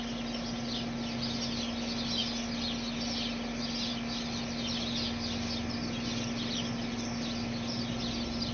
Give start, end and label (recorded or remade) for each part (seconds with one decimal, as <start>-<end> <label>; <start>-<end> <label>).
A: 0.0-8.5 recorded